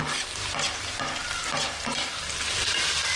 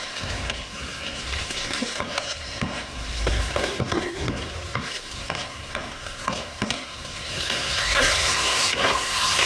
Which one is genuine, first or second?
first